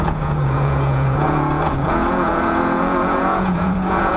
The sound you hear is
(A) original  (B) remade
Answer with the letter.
B